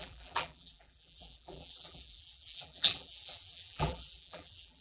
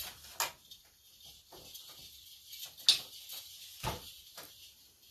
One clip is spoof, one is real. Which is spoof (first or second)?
first